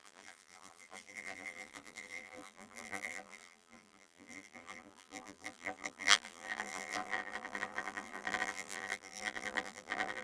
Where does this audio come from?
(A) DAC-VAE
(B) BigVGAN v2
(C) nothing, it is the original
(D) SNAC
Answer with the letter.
B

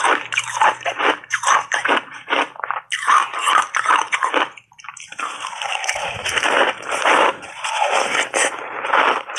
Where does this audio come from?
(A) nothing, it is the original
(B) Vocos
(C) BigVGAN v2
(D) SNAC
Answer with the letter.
C